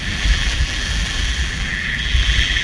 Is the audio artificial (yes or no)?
yes